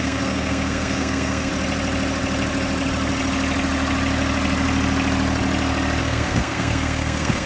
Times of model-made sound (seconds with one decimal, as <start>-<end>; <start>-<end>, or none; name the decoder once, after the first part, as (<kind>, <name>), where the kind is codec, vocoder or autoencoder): 0.0-1.5 (codec, SNAC); 6.0-7.5